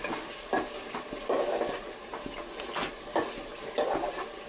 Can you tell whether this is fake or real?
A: real